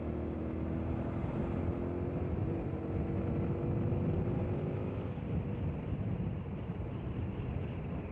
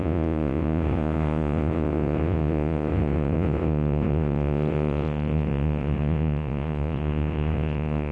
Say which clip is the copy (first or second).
second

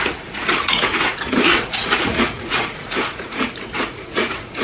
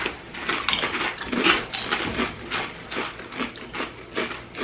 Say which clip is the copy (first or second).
first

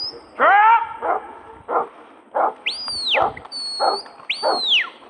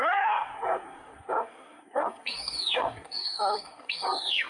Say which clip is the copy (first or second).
second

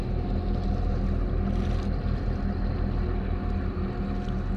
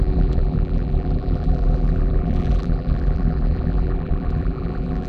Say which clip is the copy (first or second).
second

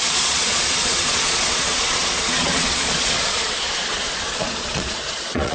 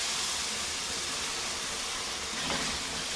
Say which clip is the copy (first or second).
first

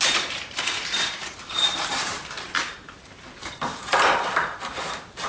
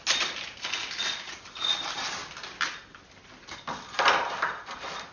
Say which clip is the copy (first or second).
first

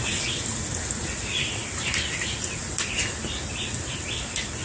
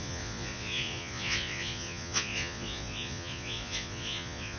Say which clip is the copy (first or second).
second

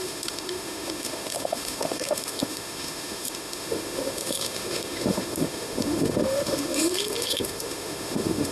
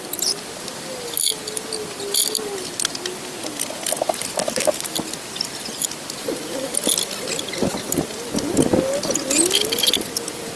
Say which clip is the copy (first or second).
first